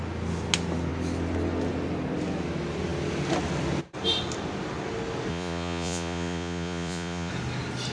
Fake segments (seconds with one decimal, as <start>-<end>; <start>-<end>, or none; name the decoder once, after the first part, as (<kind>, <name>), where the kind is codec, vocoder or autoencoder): 5.3-7.3 (vocoder, Vocos)